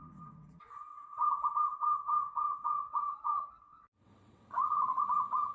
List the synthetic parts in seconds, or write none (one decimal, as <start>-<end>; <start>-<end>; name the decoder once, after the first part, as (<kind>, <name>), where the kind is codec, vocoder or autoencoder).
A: 0.0-5.5 (vocoder, WaveNeXt)